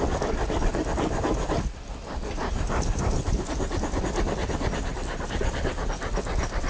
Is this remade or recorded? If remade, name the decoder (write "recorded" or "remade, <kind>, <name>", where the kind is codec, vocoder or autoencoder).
recorded